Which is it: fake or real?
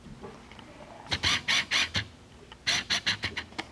real